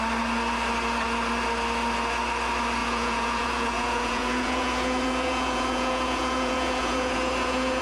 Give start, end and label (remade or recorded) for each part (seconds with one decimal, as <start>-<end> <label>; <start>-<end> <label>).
0.0-2.8 recorded; 2.8-7.8 remade